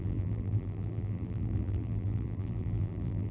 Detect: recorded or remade remade